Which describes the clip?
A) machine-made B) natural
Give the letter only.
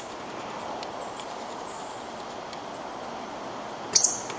B